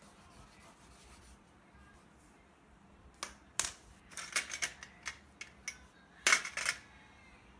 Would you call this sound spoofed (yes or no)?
no